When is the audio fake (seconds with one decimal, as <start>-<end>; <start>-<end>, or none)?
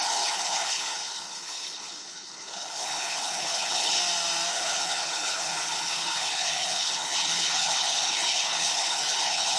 0.0-4.0; 4.5-9.6